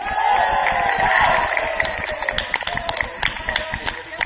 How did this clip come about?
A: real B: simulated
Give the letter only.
A